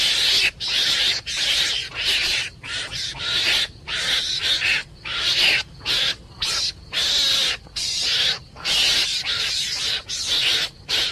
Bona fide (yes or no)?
yes